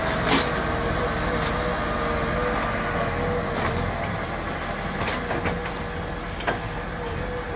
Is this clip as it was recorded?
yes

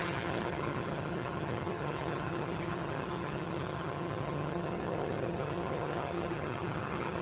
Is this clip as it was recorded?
no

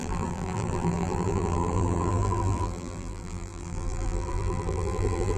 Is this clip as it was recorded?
no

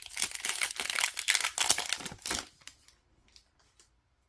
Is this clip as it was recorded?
yes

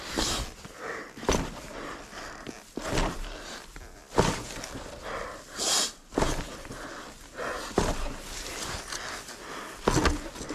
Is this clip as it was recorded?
yes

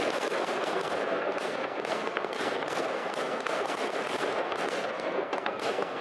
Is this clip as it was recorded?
no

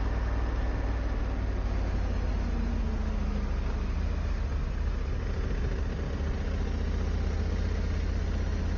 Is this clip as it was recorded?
yes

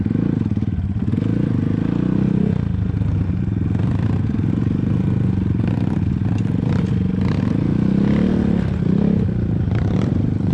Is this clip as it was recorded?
yes